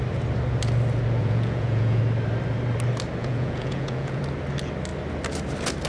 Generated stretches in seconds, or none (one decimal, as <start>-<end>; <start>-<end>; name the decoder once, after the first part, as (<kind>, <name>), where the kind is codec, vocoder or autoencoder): 1.2-2.0 (vocoder, Vocos); 3.2-4.2